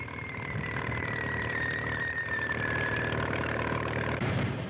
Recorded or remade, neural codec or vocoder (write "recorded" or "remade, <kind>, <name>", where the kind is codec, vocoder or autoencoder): remade, vocoder, BigVGAN v2